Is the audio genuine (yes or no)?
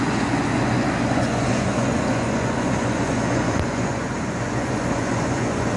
no